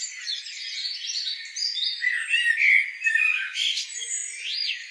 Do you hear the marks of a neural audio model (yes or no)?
no